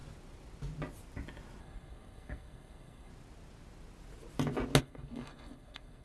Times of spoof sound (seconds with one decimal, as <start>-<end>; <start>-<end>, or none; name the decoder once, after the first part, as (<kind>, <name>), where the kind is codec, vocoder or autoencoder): 1.6-3.1 (codec, SNAC); 4.8-6.0